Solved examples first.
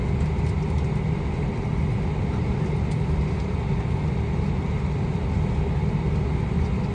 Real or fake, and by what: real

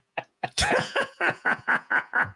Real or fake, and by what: fake, vocoder, Vocos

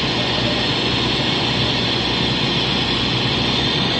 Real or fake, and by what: fake, vocoder, Vocos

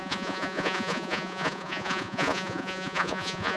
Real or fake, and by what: fake, vocoder, Vocos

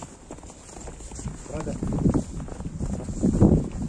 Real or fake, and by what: real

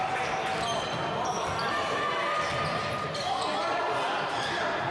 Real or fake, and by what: real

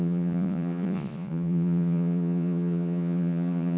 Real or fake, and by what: fake, vocoder, Vocos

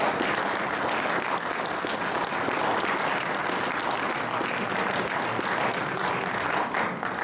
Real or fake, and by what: real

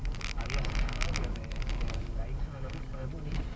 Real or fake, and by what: real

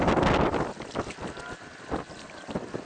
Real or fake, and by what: real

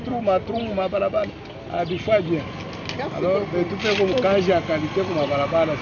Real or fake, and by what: real